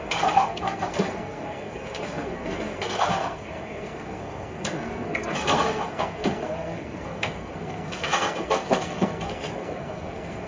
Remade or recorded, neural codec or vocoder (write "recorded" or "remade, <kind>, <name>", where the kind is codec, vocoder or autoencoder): remade, codec, SNAC